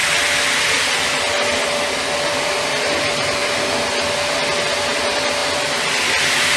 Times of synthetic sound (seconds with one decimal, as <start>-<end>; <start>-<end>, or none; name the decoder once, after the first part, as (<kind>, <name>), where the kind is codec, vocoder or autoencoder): none